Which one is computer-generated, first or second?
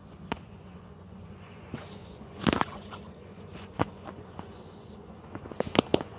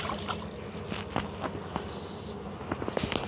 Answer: first